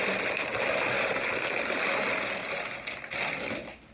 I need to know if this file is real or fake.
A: real